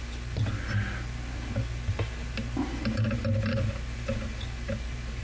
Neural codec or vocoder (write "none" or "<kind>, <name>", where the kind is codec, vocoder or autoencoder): none